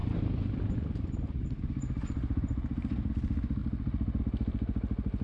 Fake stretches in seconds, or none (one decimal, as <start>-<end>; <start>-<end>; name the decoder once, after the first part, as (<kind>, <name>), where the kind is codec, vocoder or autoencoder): 0.0-3.1 (vocoder, BigVGAN v2)